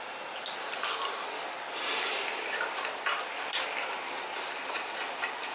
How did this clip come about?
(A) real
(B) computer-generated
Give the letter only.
A